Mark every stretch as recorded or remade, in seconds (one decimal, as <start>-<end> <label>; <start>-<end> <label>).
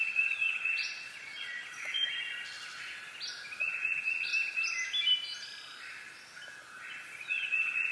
0.0-2.2 remade; 2.2-3.6 recorded; 3.6-4.3 remade; 4.3-6.9 recorded; 6.9-7.9 remade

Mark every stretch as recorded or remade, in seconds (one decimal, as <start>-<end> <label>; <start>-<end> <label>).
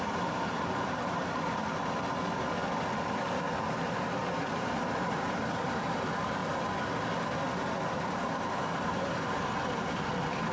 0.0-1.6 remade; 1.6-3.8 recorded; 3.8-6.4 remade; 6.4-7.9 recorded; 7.9-10.5 remade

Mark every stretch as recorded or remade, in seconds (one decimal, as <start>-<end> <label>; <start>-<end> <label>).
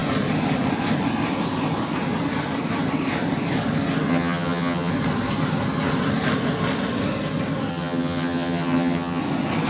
0.0-4.1 recorded; 4.1-4.9 remade; 4.9-7.7 recorded; 7.7-9.2 remade; 9.2-9.7 recorded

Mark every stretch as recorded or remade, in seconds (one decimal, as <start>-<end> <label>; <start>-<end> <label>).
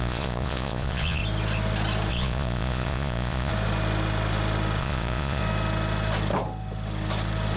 0.0-1.2 remade; 1.2-2.1 recorded; 2.1-3.5 remade; 3.5-4.8 recorded; 4.8-5.4 remade; 5.4-7.6 recorded